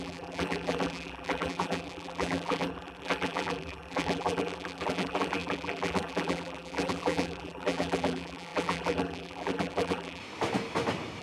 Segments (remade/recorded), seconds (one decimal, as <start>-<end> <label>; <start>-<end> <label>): 0.0-10.2 remade; 10.2-11.2 recorded